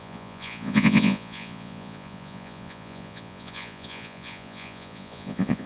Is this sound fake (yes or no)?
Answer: yes